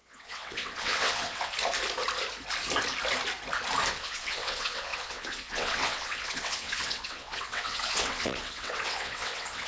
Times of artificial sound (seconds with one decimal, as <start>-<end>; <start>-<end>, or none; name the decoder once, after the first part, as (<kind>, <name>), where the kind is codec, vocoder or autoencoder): 0.0-1.5 (vocoder, WaveNeXt); 3.9-9.7